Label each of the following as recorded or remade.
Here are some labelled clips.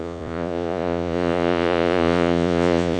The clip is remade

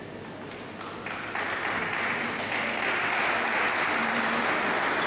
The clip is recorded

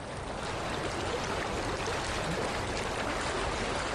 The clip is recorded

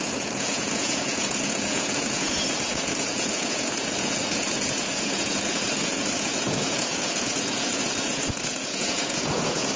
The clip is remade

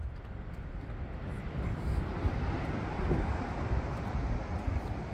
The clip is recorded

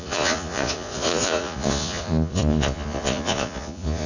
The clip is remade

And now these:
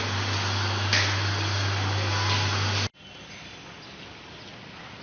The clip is recorded